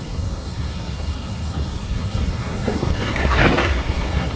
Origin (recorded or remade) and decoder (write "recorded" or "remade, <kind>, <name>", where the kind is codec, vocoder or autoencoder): remade, codec, SNAC